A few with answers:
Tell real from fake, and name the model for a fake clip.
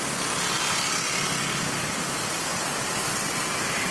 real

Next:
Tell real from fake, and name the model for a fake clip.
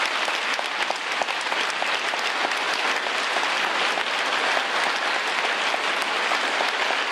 real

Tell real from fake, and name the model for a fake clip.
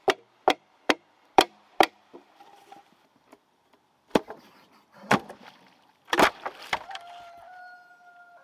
fake, vocoder, BigVGAN v2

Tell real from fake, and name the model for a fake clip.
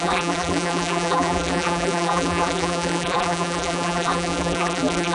fake, vocoder, BigVGAN v2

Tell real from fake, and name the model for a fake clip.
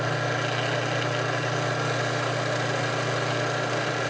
real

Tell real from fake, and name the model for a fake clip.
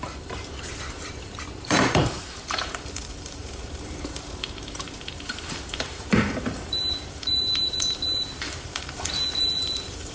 fake, vocoder, BigVGAN v2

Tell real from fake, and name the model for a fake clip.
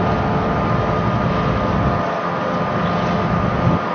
real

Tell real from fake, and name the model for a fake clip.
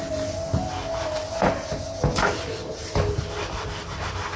real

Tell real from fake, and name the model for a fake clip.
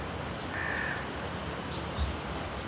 fake, vocoder, BigVGAN v2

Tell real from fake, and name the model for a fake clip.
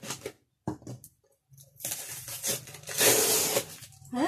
real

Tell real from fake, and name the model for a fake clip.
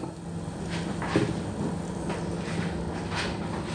real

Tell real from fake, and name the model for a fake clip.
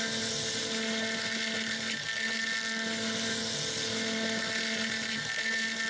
real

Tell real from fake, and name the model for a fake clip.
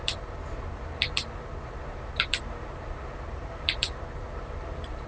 fake, vocoder, BigVGAN v2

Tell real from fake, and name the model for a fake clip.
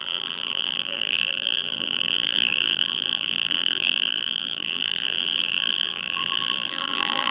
fake, vocoder, BigVGAN v2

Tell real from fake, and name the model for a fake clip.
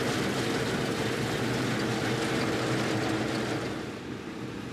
real